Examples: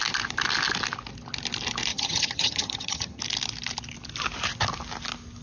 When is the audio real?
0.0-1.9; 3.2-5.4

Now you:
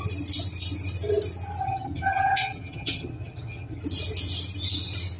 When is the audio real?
0.0-1.6; 3.8-5.2